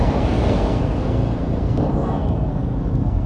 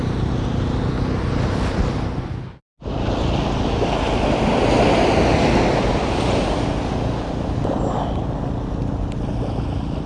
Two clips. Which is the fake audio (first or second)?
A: first